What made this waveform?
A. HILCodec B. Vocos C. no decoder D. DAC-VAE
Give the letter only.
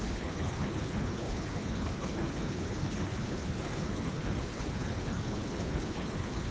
A